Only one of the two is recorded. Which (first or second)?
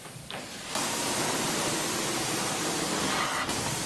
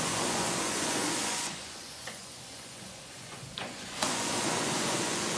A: first